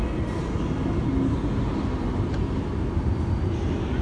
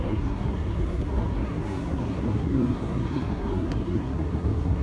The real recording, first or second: first